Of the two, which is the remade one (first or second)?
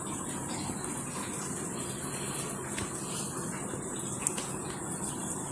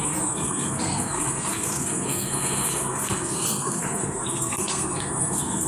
second